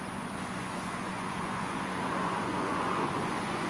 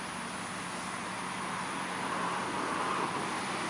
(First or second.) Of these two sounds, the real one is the second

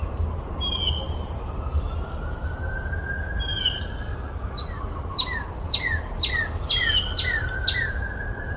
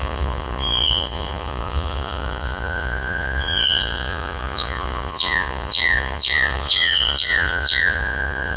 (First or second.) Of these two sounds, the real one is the first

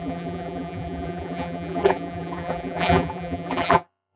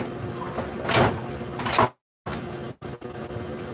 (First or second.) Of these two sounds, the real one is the second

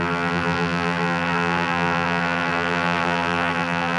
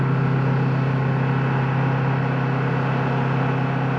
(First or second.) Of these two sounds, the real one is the second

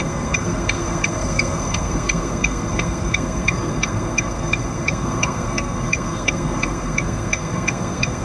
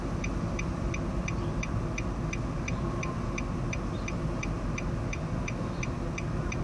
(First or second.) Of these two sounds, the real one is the second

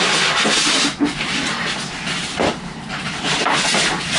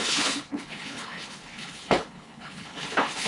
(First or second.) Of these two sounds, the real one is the first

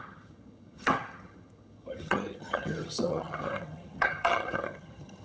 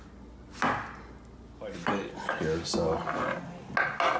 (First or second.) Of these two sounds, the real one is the second